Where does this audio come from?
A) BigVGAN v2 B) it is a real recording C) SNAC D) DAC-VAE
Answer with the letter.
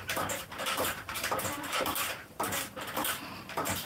A